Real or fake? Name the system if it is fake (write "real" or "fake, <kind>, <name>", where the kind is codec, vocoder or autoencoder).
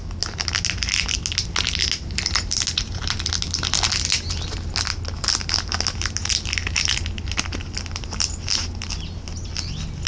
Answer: real